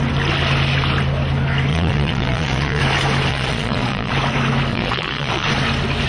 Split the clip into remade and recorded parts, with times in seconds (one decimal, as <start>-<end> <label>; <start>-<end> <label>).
0.0-1.7 recorded; 1.7-2.8 remade; 2.8-3.3 recorded; 3.3-4.1 remade; 4.1-4.7 recorded; 4.7-5.5 remade; 5.5-6.1 recorded